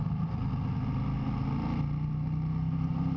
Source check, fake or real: real